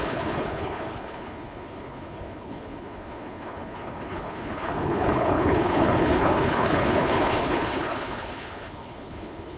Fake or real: fake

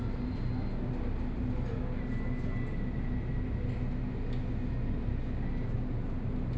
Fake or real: real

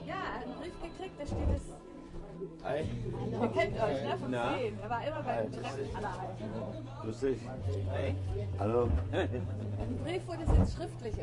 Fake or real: fake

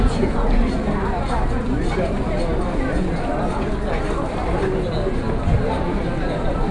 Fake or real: real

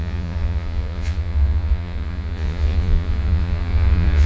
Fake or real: fake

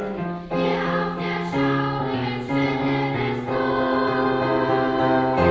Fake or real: real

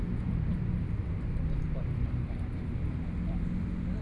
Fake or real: real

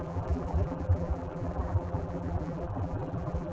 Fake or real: fake